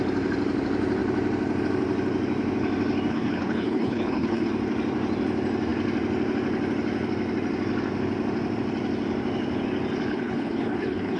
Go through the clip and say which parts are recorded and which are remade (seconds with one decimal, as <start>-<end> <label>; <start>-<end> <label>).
0.0-3.1 recorded; 3.1-4.5 remade; 4.5-10.1 recorded; 10.1-11.2 remade